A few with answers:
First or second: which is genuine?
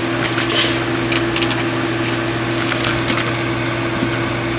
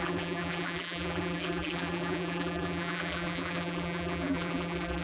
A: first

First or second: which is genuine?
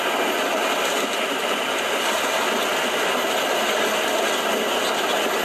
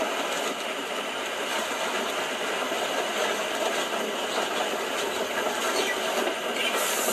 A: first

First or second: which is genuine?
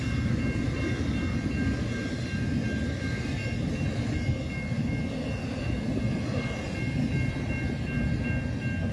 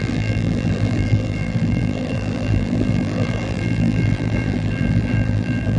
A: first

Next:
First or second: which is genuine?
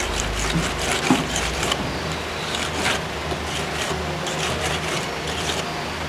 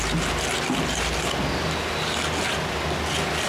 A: second